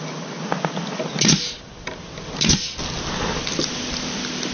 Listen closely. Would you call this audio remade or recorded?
recorded